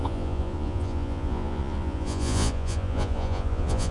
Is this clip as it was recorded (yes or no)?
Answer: no